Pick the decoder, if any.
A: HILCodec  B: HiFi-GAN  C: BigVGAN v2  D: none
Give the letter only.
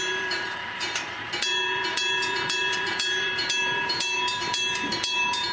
C